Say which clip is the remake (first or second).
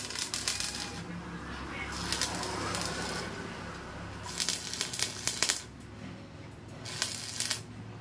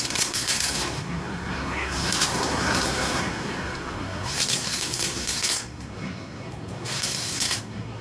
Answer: second